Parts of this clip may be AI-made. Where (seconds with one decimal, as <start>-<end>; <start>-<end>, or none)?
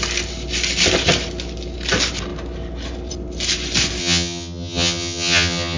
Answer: 4.0-5.8